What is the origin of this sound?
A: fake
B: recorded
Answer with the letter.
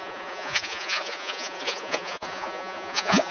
A